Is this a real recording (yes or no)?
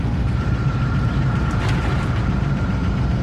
no